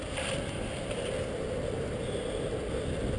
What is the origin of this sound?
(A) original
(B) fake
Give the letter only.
A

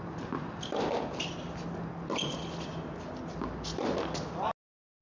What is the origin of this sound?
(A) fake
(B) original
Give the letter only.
B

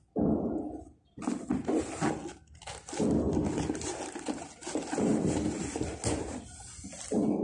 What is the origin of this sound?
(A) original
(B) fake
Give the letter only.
A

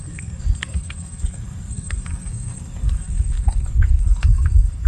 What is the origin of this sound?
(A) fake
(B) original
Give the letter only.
A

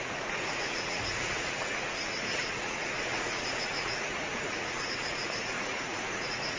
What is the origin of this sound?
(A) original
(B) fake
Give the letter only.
B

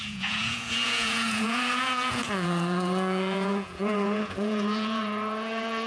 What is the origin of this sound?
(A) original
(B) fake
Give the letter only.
B